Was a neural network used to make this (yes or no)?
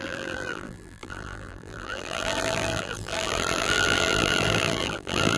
yes